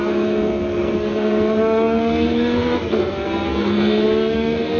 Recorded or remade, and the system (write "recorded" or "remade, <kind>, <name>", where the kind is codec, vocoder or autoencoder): remade, codec, SNAC